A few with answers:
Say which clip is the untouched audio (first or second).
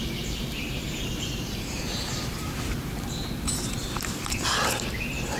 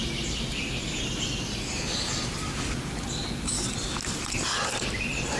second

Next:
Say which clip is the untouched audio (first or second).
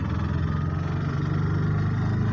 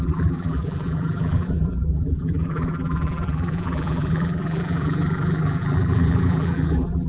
first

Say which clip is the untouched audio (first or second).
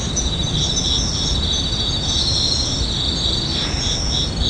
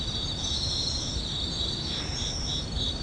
first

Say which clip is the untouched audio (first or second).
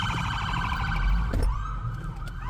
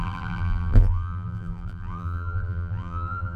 first